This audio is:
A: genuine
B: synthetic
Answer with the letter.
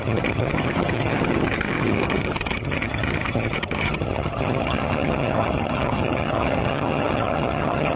B